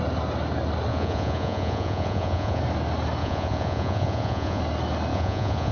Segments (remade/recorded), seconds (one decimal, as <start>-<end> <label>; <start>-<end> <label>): 0.0-0.9 recorded; 0.9-2.6 remade; 2.6-3.2 recorded; 3.2-4.6 remade; 4.6-5.1 recorded; 5.1-5.7 remade